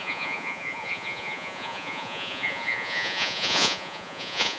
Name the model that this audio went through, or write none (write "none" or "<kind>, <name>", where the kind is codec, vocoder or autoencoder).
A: vocoder, Vocos